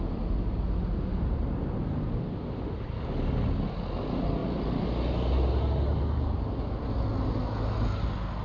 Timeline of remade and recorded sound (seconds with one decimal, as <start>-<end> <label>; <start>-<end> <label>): 0.0-8.4 recorded

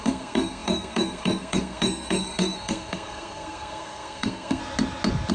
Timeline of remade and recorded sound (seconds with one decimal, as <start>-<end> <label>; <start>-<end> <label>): 0.0-4.6 remade; 4.6-5.3 recorded